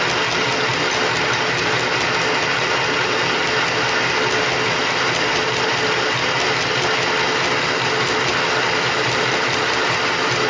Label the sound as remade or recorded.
recorded